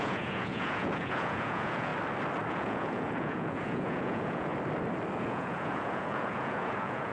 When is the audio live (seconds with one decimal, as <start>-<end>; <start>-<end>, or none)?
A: 1.9-2.5; 4.5-5.2